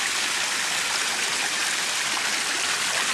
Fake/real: real